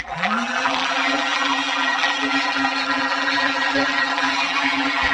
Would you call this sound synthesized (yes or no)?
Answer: yes